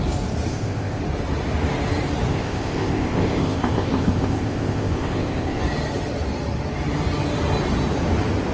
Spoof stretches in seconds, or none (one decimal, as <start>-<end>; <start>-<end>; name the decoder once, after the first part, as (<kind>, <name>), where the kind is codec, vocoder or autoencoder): 0.5-1.0 (codec, ZipCodec); 2.3-5.6